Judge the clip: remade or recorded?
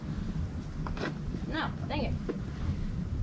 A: recorded